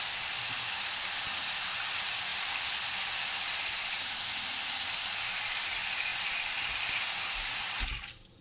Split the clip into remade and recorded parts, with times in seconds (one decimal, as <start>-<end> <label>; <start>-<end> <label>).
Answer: 0.0-8.4 recorded